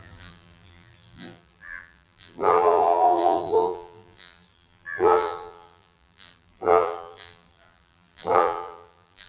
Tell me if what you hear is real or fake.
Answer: fake